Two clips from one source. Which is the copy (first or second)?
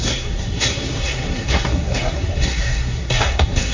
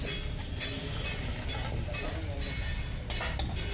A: first